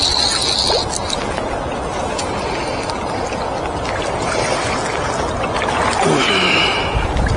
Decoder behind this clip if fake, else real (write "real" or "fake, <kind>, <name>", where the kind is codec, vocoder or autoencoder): real